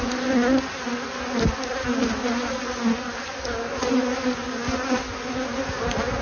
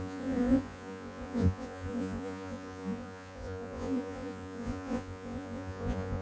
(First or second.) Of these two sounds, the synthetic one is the second